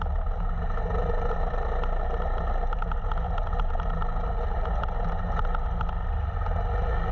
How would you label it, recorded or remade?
recorded